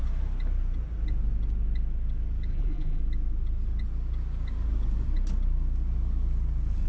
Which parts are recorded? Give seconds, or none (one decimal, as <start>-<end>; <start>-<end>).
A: 0.0-2.5; 3.0-6.9